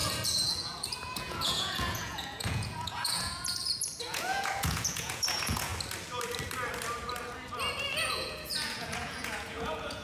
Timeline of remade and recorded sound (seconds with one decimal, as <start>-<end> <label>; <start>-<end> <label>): 0.0-5.7 remade; 5.7-7.9 recorded; 7.9-10.0 remade